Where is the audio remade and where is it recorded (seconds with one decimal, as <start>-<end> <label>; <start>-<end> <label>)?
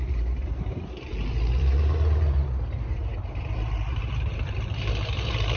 0.0-5.6 remade